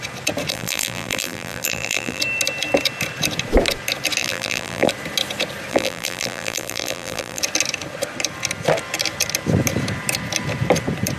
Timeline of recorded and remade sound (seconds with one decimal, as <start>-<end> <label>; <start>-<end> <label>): 0.0-0.5 recorded; 0.5-2.2 remade; 2.2-4.2 recorded; 4.2-4.9 remade; 4.9-5.7 recorded; 5.7-7.4 remade; 7.4-11.2 recorded